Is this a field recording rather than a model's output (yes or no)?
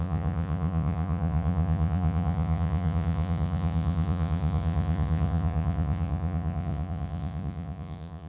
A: no